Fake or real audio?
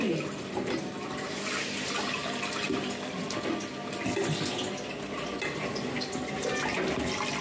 real